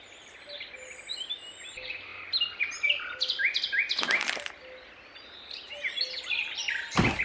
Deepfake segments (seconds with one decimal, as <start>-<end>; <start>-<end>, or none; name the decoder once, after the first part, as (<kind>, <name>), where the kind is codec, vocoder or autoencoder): none